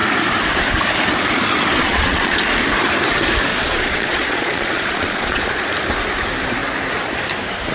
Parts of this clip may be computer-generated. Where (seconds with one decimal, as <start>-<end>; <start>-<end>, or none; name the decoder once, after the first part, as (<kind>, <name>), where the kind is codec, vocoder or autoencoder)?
1.8-2.4 (vocoder, Vocos); 3.5-5.4